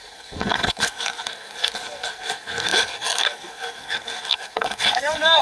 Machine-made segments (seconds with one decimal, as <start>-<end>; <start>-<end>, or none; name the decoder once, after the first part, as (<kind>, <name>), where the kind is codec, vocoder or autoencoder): 0.0-5.4 (codec, SNAC)